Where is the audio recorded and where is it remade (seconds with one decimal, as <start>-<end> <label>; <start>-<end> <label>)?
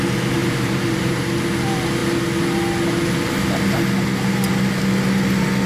0.0-0.4 recorded; 0.4-1.1 remade; 1.1-5.7 recorded